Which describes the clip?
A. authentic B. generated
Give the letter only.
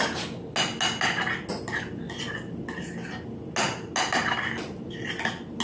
A